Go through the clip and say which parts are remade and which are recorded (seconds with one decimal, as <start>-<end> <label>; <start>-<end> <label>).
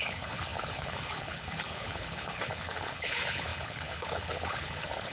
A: 0.0-5.1 remade